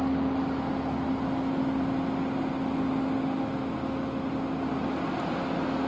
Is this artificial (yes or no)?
no